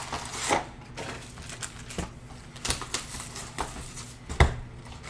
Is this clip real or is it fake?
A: real